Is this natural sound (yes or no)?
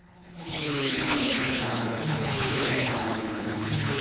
no